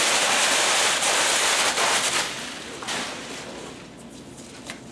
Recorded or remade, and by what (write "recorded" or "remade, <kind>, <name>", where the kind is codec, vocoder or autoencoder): recorded